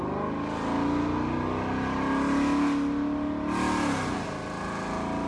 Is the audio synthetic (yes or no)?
no